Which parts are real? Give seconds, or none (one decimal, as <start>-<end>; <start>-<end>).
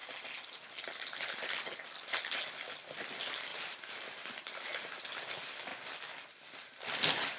0.0-3.5; 5.0-7.4